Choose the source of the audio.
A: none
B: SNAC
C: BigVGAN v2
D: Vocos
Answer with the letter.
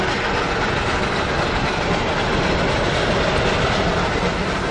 A